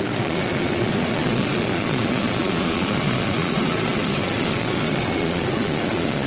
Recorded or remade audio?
remade